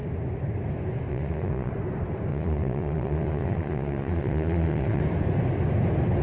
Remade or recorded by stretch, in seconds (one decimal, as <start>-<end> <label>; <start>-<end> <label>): 0.0-1.1 recorded; 1.1-1.7 remade; 1.7-2.3 recorded; 2.3-5.0 remade; 5.0-6.2 recorded